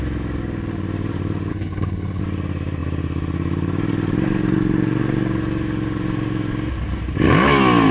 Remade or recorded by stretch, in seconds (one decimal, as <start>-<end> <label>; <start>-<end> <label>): 0.0-1.5 recorded; 1.5-2.2 remade; 2.2-7.9 recorded

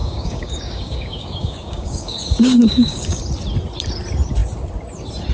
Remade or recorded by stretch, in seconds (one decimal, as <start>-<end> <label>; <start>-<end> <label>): 0.0-3.2 remade; 3.2-5.3 recorded

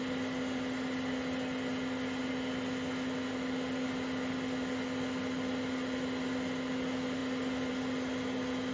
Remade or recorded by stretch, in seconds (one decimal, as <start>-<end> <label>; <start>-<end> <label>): 0.0-8.7 recorded

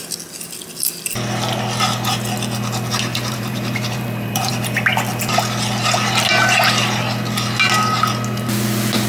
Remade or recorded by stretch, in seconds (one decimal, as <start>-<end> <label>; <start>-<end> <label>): 0.0-3.1 recorded; 3.1-4.5 remade; 4.5-9.1 recorded